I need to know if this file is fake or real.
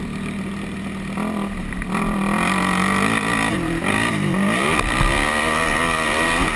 real